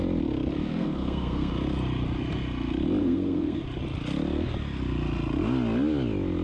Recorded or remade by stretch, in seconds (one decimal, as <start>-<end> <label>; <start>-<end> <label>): 0.0-0.6 recorded; 0.6-1.5 remade; 1.5-3.0 recorded; 3.0-3.6 remade; 3.6-6.4 recorded